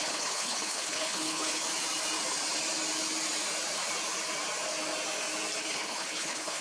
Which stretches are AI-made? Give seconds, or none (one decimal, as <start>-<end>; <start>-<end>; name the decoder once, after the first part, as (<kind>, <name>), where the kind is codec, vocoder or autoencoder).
0.0-1.6 (codec, HILCodec); 5.6-6.6